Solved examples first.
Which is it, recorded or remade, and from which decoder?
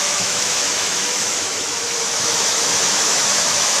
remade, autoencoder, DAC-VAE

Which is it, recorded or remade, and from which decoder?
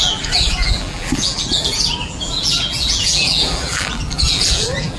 remade, vocoder, BigVGAN v2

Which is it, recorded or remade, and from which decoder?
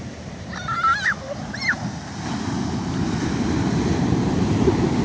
recorded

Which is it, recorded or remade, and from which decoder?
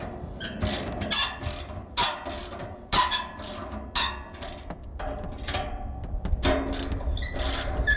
recorded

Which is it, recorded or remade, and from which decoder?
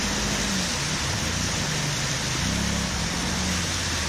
recorded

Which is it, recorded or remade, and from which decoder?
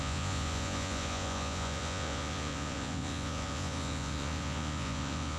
remade, vocoder, Vocos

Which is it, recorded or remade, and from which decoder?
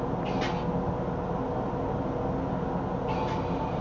recorded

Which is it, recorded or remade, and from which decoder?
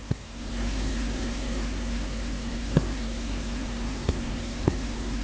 remade, codec, SNAC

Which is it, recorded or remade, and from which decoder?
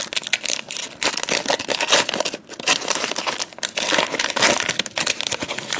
recorded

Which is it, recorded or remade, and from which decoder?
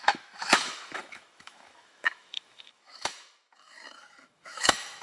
remade, autoencoder, DAC-VAE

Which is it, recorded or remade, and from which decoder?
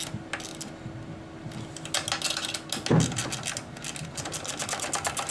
recorded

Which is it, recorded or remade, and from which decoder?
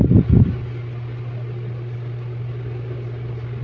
recorded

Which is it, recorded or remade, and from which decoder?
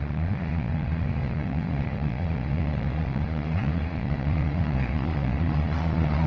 remade, vocoder, Vocos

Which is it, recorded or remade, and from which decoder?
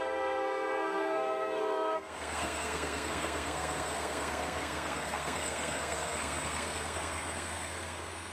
remade, codec, SNAC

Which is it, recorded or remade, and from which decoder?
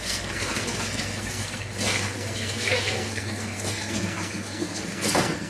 remade, codec, SNAC